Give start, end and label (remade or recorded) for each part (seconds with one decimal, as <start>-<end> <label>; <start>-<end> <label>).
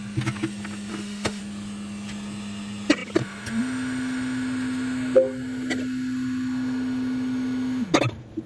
0.0-0.9 recorded; 0.9-1.4 remade; 1.4-8.5 recorded